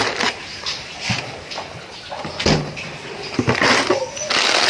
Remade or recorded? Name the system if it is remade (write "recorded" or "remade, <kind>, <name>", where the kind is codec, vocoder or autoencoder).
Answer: recorded